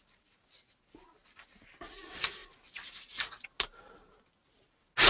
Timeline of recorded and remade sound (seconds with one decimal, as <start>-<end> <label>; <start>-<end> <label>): 0.0-5.1 recorded